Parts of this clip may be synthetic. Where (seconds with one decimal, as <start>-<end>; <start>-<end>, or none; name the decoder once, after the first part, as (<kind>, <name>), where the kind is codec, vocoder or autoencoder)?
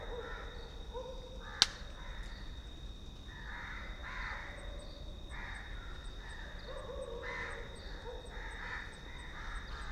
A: none